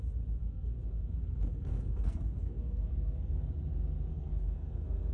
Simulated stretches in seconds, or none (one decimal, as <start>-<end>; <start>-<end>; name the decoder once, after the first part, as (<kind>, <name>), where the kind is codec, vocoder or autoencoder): 0.4-3.5 (codec, SNAC); 4.1-5.1